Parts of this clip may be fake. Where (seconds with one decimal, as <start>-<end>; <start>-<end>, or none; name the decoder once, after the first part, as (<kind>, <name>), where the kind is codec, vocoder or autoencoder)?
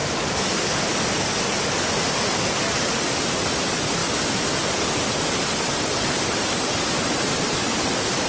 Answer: none